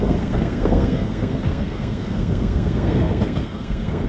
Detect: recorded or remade remade